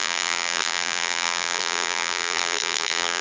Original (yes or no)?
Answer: no